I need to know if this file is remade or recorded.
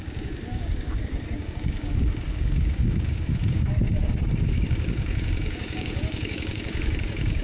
remade